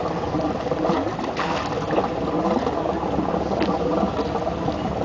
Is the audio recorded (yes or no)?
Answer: yes